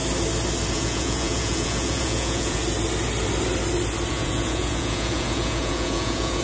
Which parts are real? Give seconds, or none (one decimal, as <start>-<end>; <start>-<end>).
0.0-0.7; 2.6-4.1